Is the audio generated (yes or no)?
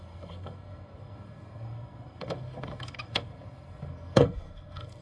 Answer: yes